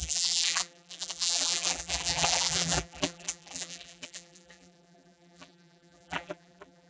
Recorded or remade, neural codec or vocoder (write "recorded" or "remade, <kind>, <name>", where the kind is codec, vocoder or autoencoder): remade, vocoder, BigVGAN v2